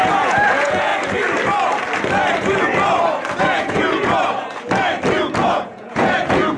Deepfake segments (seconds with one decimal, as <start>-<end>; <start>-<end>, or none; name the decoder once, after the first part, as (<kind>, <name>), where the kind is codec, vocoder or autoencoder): 0.0-0.9 (vocoder, Vocos); 3.4-4.2; 5.4-6.6